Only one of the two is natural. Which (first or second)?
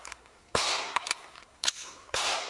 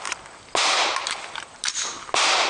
second